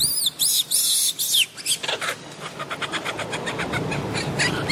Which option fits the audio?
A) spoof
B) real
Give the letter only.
B